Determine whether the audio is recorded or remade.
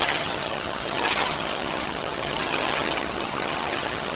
remade